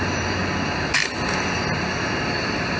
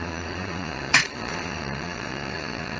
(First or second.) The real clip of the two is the first